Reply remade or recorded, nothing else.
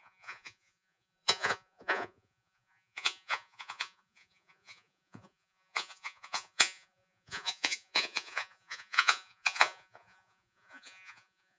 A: remade